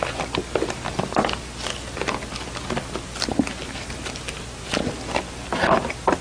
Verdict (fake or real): real